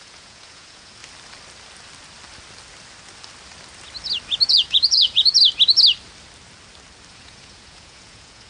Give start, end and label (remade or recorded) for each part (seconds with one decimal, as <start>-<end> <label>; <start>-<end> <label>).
0.0-1.0 remade; 1.0-4.5 recorded; 4.5-5.3 remade; 5.3-7.1 recorded; 7.1-8.5 remade